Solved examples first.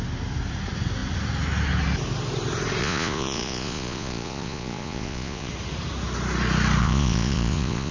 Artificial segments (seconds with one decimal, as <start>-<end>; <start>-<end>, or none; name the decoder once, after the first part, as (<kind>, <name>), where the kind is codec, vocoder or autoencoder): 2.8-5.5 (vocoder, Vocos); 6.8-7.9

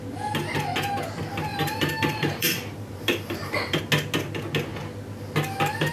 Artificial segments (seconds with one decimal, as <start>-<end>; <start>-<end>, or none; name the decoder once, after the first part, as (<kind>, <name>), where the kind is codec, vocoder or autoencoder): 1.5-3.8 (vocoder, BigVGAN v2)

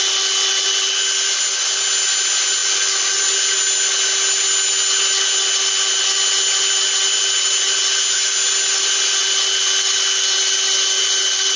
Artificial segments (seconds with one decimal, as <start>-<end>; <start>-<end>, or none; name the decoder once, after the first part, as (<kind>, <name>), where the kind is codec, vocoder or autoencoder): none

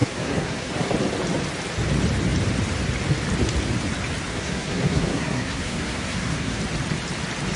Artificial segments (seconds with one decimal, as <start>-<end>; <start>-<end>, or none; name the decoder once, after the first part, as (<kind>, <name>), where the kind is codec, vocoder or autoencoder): 0.0-0.7 (codec, SNAC); 4.3-6.6

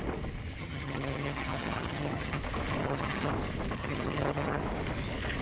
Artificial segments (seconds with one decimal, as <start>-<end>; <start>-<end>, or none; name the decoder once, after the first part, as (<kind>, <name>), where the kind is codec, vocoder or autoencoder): 0.6-2.4 (vocoder, HiFi-GAN); 2.8-3.3; 3.8-4.6